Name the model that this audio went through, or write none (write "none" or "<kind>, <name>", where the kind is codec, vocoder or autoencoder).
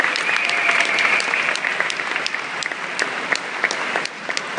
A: none